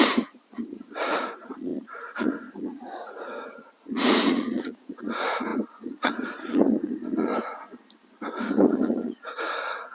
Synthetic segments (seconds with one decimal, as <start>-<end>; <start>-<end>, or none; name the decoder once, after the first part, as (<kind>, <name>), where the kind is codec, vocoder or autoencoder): 0.0-7.3 (vocoder, Vocos); 8.5-9.9